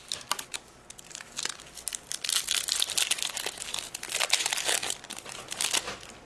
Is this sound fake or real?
real